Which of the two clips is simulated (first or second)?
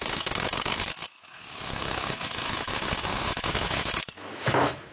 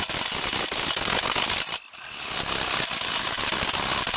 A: first